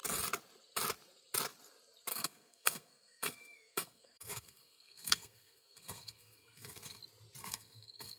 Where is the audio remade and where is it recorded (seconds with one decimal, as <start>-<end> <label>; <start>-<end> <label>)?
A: 0.0-2.1 recorded; 2.1-7.0 remade; 7.0-7.4 recorded; 7.4-8.2 remade